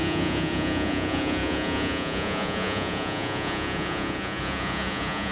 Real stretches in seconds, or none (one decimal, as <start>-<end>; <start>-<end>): none